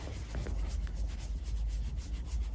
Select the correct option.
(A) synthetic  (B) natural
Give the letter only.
B